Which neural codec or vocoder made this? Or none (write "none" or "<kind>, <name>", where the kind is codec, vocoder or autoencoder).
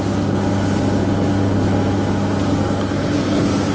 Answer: none